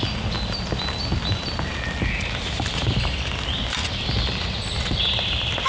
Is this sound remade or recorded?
recorded